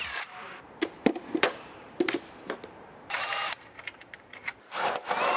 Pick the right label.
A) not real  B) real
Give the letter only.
A